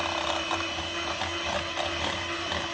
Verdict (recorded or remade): recorded